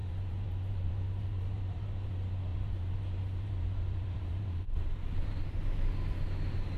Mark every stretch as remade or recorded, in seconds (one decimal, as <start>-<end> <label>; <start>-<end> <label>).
0.0-2.1 remade; 2.1-2.5 recorded; 2.5-5.4 remade; 5.4-6.8 recorded